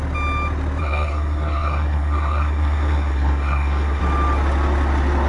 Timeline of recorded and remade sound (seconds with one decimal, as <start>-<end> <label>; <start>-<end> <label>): 0.0-0.8 recorded; 0.8-4.0 remade; 4.0-5.3 recorded